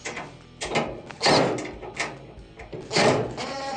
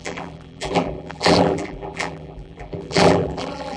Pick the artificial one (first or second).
second